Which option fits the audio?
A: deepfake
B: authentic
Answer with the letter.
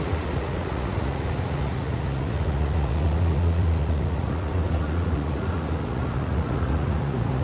A